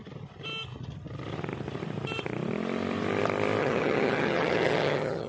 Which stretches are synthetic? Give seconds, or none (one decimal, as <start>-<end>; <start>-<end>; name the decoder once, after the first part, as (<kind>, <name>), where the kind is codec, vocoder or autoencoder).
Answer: 3.6-5.3 (vocoder, HiFi-GAN)